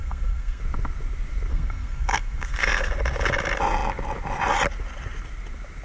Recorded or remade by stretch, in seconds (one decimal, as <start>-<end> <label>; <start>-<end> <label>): 0.0-0.6 remade; 0.6-1.5 recorded; 1.5-2.9 remade; 2.9-5.8 recorded